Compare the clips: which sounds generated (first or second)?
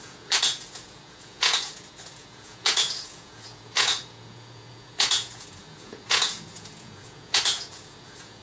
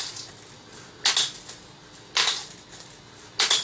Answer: first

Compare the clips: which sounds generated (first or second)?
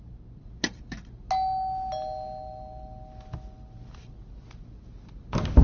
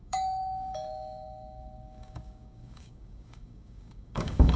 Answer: second